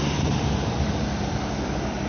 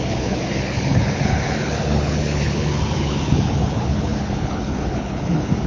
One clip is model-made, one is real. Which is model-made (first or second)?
second